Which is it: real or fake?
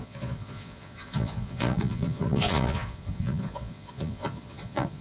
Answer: fake